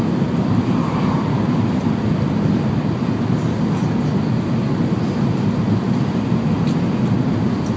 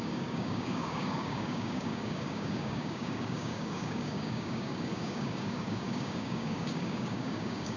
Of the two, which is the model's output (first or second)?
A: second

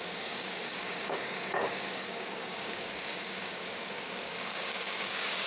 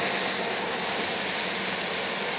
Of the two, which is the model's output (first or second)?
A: first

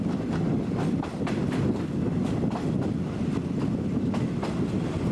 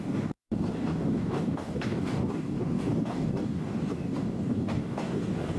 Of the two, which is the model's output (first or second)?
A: second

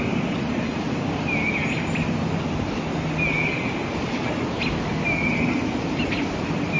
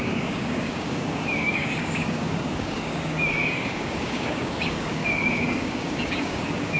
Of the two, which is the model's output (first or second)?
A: second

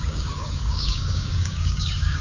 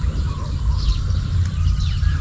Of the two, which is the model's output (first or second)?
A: first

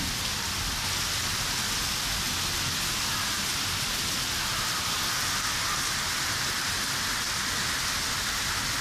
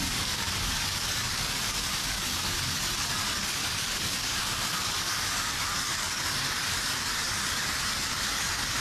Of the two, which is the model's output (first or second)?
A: second